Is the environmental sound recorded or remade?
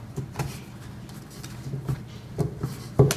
recorded